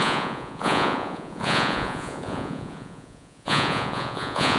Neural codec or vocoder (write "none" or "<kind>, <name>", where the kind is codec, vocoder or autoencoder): vocoder, Vocos